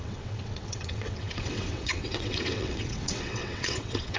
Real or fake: fake